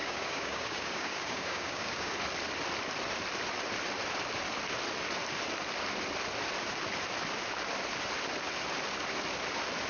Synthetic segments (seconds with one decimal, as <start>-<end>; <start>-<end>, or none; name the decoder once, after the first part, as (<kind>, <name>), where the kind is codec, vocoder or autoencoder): 0.0-2.1 (codec, DAC)